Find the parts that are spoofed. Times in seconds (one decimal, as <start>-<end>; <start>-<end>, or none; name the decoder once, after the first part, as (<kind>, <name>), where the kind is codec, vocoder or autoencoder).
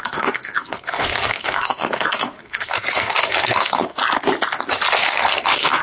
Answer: 0.0-4.0 (codec, SNAC); 5.0-5.8